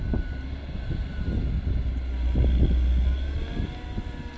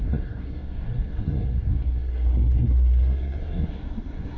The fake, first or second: second